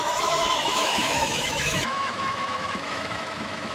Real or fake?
fake